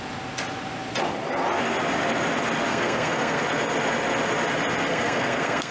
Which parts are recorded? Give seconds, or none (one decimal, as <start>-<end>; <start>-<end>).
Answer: 0.0-2.7; 3.4-4.9